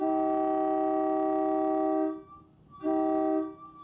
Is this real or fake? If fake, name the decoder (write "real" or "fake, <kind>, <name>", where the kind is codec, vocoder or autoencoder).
real